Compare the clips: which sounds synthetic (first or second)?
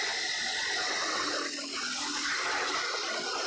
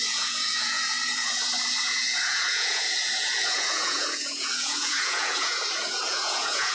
second